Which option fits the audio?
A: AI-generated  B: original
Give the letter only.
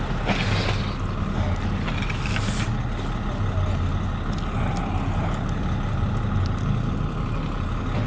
B